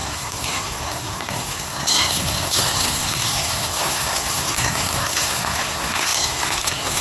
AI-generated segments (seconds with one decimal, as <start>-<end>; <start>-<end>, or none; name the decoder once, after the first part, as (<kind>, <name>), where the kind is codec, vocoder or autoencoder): 0.0-7.0 (codec, SNAC)